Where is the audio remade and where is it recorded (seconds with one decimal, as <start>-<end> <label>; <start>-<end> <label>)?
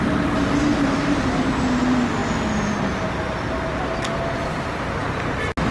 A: 0.0-0.6 recorded; 0.6-1.2 remade; 1.2-5.7 recorded